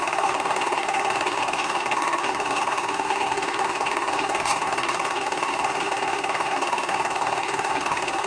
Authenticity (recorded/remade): remade